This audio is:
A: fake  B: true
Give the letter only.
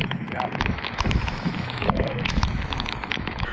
A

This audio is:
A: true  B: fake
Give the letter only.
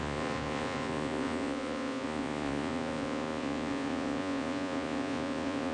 B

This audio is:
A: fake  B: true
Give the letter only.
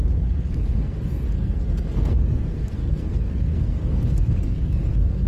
A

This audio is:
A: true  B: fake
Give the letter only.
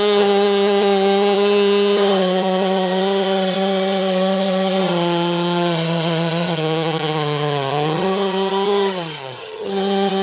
B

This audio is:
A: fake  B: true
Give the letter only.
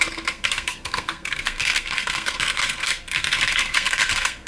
A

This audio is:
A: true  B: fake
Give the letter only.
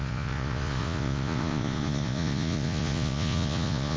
B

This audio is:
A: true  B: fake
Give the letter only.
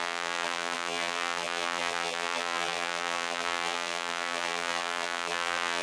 B